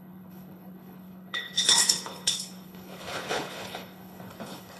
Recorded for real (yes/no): no